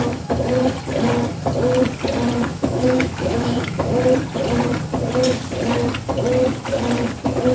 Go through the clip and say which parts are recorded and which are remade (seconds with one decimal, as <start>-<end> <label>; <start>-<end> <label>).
0.0-2.5 recorded; 2.5-3.9 remade; 3.9-7.5 recorded